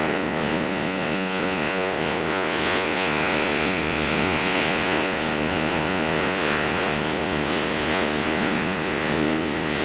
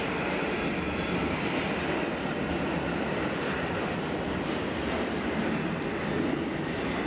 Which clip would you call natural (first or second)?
second